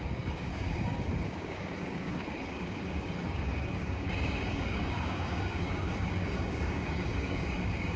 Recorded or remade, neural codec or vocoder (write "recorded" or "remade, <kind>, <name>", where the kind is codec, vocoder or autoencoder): remade, codec, DAC